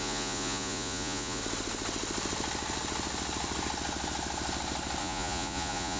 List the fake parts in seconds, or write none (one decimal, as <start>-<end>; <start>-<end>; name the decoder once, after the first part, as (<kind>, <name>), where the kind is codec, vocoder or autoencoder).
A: 0.0-1.4 (vocoder, Vocos); 5.0-6.0